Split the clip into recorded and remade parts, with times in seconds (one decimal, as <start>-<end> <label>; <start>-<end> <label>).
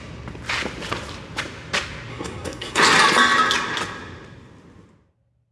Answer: 0.0-2.1 recorded; 2.1-2.8 remade; 2.8-5.5 recorded